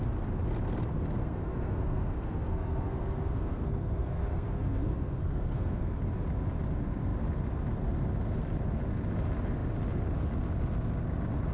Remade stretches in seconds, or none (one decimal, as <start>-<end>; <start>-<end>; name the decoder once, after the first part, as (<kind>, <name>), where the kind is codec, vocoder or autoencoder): 1.2-5.9 (codec, SNAC)